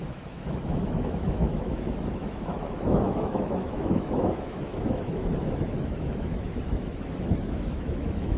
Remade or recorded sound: remade